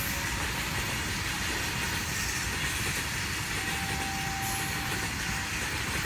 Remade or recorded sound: recorded